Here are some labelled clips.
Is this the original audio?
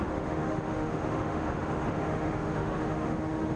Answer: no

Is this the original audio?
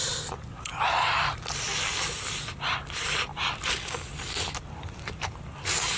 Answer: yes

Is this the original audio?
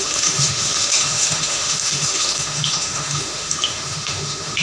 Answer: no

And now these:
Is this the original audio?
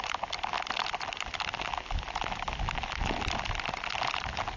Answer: yes